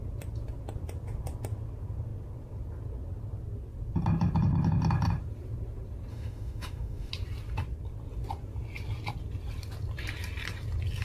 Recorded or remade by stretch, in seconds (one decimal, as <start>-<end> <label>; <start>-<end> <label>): 0.0-6.1 recorded; 6.1-7.1 remade; 7.1-11.0 recorded